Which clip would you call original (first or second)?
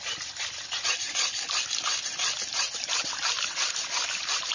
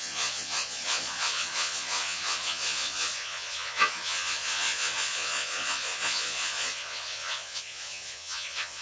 first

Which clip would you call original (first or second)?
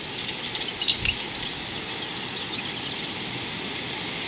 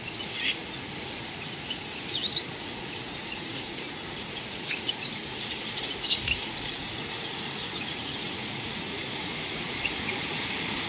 first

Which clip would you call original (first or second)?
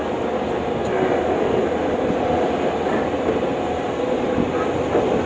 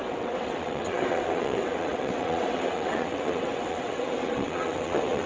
first